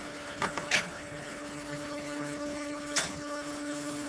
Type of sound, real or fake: fake